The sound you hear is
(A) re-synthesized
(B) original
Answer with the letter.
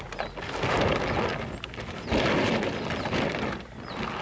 B